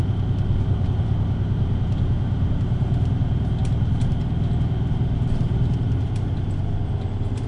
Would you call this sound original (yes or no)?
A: yes